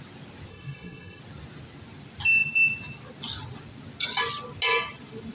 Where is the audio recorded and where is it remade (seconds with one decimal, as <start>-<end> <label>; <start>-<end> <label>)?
0.0-0.5 recorded; 0.5-1.2 remade; 1.2-5.3 recorded